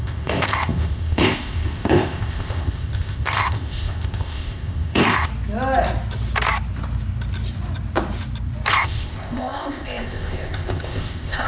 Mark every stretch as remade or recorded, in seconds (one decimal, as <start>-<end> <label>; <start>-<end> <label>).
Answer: 0.0-5.3 remade; 5.3-8.7 recorded; 8.7-11.5 remade